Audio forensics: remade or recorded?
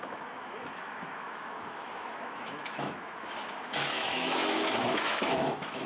remade